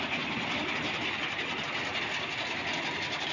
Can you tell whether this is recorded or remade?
recorded